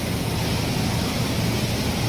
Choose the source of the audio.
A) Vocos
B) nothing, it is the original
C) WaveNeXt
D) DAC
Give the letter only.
B